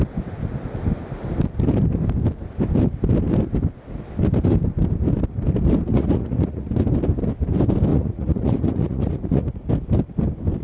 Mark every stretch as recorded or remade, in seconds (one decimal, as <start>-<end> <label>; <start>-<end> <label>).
0.0-5.9 recorded; 5.9-6.7 remade; 6.7-7.9 recorded; 7.9-9.7 remade; 9.7-10.6 recorded